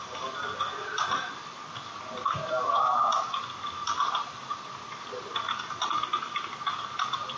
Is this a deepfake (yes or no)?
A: no